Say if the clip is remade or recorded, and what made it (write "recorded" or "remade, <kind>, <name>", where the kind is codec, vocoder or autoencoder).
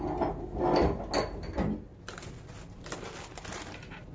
recorded